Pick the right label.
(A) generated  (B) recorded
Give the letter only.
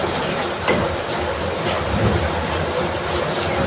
B